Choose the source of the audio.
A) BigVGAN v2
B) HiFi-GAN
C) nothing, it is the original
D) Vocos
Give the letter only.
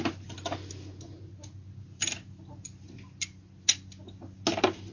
C